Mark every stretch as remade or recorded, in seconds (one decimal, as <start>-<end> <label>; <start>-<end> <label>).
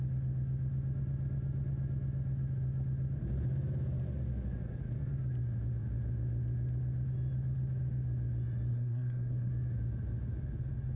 0.0-8.7 recorded; 8.7-9.5 remade; 9.5-11.0 recorded